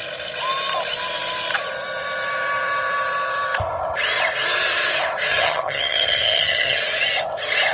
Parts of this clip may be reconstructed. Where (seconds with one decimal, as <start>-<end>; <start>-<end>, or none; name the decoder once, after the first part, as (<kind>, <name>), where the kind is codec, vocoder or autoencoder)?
5.3-6.8 (vocoder, HiFi-GAN)